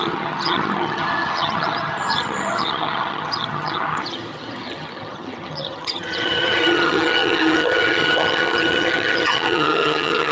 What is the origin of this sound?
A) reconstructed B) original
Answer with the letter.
A